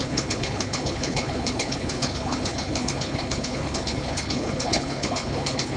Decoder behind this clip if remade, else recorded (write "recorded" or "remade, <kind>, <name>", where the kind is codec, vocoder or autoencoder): remade, codec, HILCodec